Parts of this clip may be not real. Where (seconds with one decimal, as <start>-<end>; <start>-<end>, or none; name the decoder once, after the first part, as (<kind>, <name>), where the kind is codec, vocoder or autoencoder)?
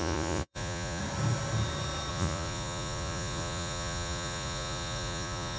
0.0-1.0 (vocoder, Vocos); 2.1-5.6